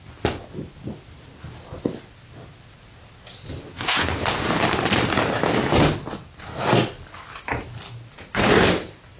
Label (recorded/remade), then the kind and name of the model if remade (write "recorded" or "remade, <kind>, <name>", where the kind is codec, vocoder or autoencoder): recorded